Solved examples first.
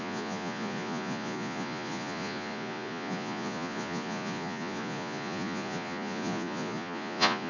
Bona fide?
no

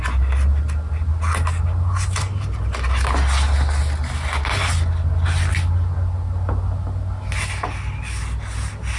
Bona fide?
yes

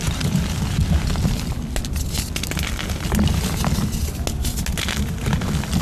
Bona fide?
yes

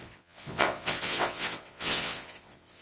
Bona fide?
no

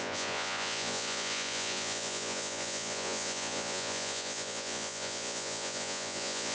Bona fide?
no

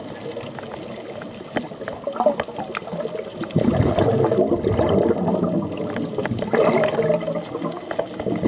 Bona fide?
yes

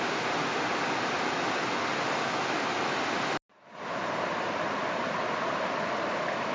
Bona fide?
yes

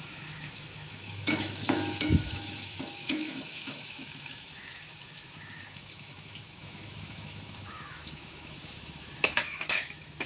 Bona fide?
no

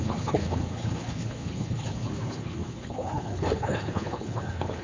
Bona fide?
no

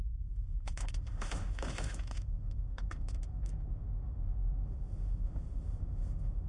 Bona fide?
no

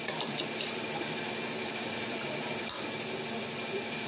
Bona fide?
no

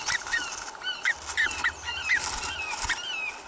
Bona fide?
yes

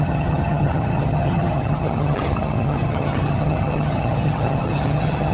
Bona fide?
no